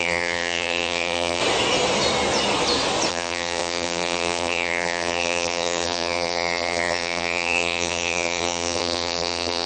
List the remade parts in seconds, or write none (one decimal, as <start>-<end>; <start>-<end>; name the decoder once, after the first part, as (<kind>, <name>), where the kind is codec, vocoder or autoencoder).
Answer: 0.0-1.4 (vocoder, BigVGAN v2); 3.1-9.7